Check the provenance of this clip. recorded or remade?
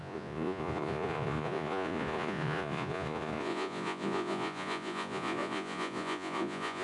remade